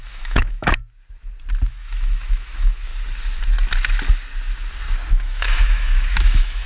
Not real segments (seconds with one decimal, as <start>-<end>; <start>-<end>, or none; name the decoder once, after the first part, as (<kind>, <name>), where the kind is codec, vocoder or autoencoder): 0.0-0.8 (autoencoder, DAC-VAE); 1.7-2.9; 5.1-6.7